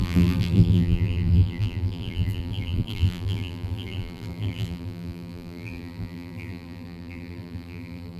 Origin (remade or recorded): remade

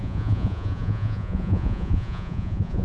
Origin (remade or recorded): remade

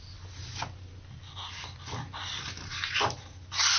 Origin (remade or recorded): recorded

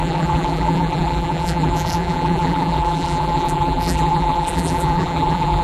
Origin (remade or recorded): remade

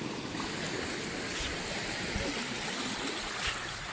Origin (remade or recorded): recorded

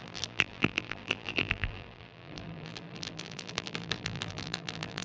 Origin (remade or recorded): remade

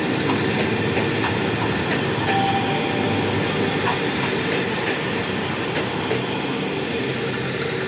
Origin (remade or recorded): recorded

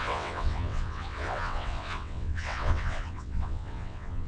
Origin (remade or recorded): remade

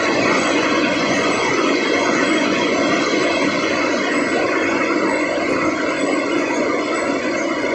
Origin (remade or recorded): remade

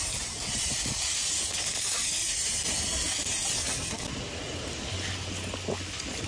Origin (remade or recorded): recorded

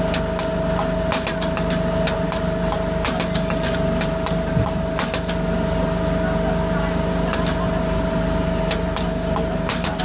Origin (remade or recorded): recorded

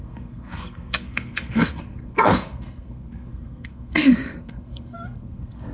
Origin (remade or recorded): remade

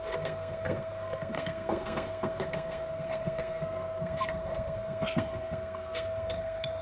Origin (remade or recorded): remade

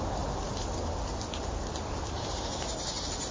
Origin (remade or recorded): recorded